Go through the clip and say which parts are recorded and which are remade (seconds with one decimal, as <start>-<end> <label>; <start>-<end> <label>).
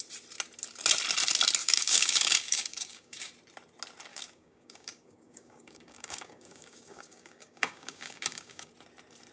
0.0-1.6 recorded; 1.6-3.3 remade; 3.3-4.1 recorded; 4.1-8.7 remade; 8.7-9.3 recorded